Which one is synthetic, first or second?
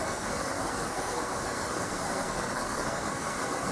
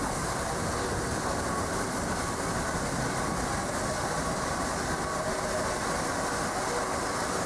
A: first